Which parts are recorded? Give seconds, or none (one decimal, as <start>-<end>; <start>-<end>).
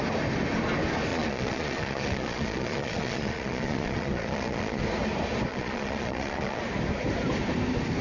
0.0-1.1; 4.8-5.5; 6.6-8.0